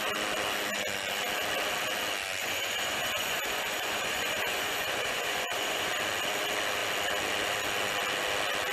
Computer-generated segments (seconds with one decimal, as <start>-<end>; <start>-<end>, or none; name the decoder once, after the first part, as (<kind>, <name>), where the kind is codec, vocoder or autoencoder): 2.4-5.9 (vocoder, Vocos)